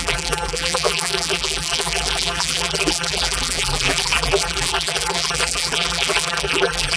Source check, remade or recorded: remade